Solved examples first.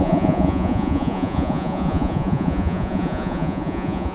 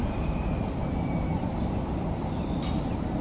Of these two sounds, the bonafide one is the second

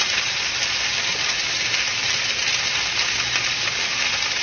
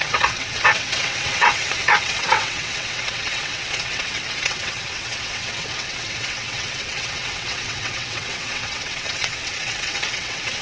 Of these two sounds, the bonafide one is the first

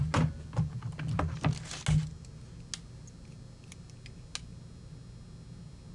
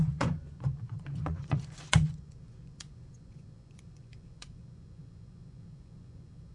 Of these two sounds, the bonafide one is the first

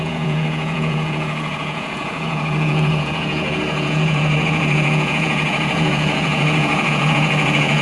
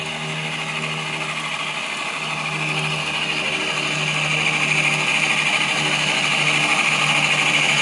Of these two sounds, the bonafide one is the second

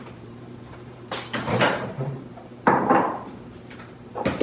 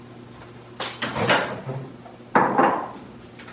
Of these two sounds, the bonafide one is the second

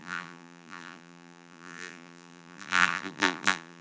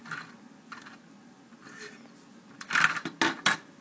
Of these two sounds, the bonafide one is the second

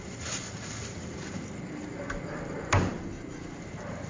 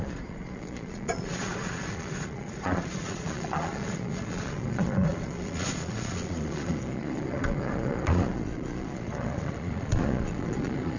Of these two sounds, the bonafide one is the first